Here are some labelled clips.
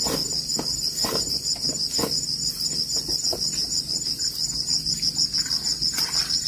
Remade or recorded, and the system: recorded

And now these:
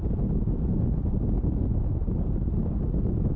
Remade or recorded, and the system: recorded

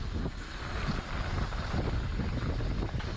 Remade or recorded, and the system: recorded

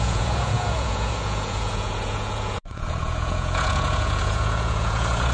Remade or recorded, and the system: remade, vocoder, Vocos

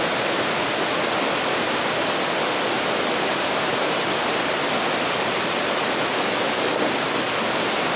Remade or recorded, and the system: recorded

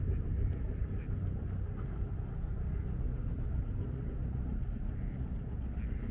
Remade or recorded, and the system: recorded